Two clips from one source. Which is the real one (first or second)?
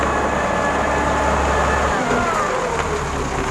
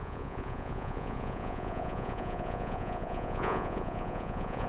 first